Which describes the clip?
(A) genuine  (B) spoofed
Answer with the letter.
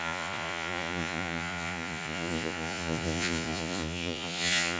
B